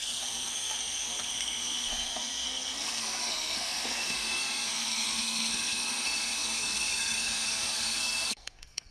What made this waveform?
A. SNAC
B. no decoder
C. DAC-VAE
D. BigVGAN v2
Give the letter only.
A